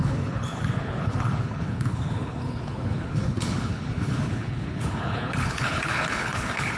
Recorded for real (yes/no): no